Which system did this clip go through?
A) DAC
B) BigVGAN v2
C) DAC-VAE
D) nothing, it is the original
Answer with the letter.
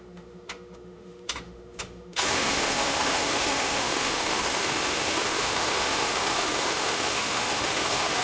C